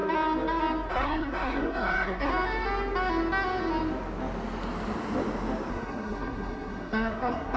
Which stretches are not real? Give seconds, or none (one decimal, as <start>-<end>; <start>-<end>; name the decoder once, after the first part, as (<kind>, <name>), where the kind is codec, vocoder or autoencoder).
0.9-2.3 (codec, SNAC); 5.7-7.6